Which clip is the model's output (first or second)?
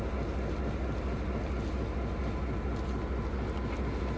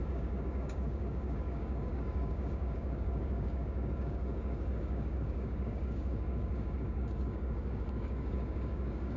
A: second